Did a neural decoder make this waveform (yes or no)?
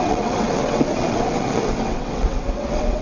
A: yes